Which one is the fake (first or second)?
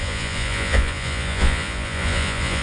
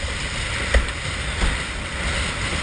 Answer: first